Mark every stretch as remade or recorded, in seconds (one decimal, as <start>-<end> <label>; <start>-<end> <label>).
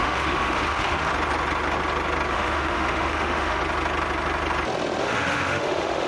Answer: 0.0-1.1 remade; 1.1-2.3 recorded; 2.3-3.6 remade; 3.6-5.0 recorded; 5.0-6.1 remade